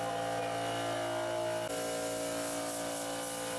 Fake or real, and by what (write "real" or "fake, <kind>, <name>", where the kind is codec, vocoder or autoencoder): real